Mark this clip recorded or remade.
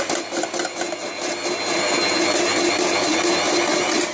recorded